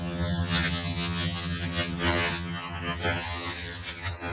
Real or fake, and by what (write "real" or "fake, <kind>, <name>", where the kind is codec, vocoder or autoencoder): fake, vocoder, HiFi-GAN